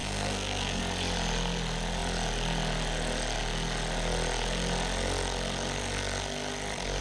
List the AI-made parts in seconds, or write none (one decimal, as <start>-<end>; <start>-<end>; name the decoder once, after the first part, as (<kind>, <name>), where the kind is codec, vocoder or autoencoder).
0.0-0.8 (codec, SNAC)